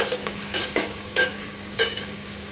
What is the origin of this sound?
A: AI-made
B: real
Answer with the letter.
A